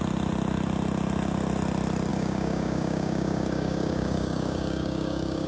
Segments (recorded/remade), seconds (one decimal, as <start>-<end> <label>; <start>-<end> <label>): 0.0-2.1 recorded; 2.1-5.5 remade